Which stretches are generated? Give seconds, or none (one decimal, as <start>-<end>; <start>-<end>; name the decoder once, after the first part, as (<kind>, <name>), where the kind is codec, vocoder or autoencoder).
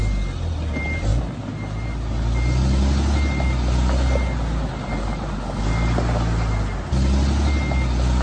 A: none